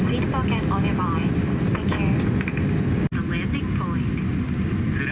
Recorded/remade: recorded